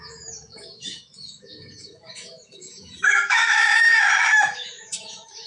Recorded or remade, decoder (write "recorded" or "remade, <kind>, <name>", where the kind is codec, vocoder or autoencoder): remade, autoencoder, DAC-VAE